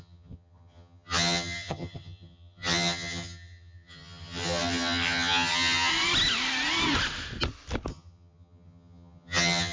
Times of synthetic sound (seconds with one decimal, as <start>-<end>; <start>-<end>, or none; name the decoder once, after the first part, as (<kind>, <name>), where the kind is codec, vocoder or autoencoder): 0.0-5.9 (vocoder, HiFi-GAN); 7.9-9.7